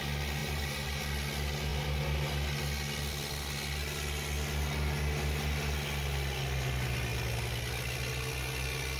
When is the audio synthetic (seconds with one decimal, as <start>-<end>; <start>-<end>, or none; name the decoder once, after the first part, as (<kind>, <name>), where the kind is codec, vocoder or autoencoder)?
0.4-1.0 (vocoder, BigVGAN v2)

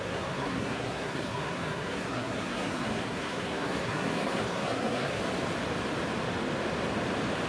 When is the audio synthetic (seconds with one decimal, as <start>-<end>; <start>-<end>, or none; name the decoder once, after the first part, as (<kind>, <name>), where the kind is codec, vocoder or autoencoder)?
0.0-5.2 (codec, SNAC)

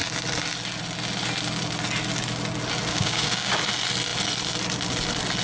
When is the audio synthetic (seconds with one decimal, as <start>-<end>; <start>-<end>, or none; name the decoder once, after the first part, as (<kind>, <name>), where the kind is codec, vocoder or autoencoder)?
2.9-3.5 (codec, DAC)

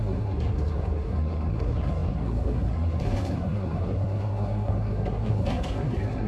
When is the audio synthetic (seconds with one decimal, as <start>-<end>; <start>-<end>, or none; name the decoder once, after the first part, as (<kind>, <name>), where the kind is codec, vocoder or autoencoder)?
0.0-6.3 (codec, SNAC)

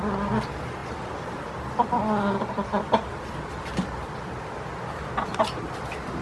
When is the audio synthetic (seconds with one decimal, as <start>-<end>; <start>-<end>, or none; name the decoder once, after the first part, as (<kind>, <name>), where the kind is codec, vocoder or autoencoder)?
none

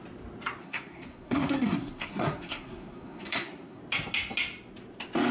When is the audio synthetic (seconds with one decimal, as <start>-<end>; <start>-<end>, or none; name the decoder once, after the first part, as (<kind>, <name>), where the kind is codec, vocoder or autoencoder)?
0.6-3.8 (codec, SNAC)

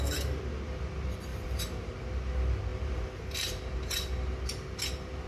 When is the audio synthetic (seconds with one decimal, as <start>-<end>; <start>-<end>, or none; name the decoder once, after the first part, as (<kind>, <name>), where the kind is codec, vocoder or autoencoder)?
1.3-1.9 (vocoder, BigVGAN v2); 2.7-3.7